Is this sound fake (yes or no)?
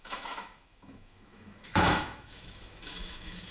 yes